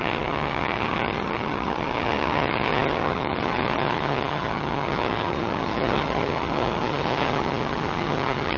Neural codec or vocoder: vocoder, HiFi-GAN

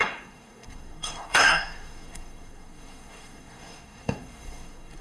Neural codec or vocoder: codec, SNAC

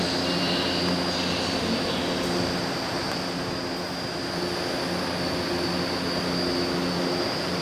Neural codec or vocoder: none